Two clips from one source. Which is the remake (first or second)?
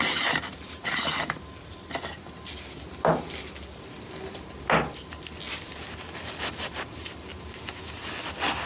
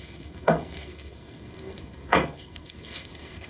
second